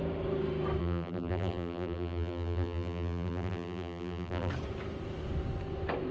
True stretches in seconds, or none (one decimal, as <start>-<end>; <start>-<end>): 0.0-0.8; 4.5-6.1